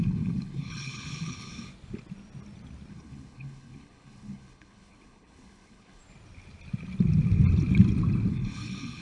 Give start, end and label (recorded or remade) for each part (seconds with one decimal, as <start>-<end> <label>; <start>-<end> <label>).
0.0-1.5 remade; 1.5-2.9 recorded; 2.9-6.0 remade; 6.0-8.3 recorded; 8.3-9.0 remade